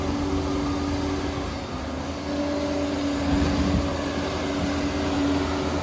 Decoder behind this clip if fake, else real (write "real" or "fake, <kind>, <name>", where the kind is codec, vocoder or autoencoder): real